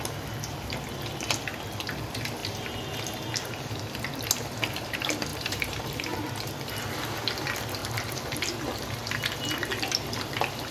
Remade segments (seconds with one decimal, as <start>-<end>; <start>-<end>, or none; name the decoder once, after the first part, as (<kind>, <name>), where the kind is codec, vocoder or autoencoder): 5.3-6.3 (vocoder, BigVGAN v2); 7.8-8.4